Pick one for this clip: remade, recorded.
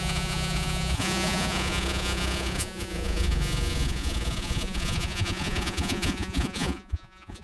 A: remade